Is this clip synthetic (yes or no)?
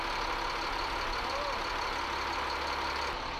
no